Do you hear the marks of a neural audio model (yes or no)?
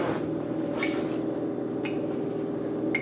no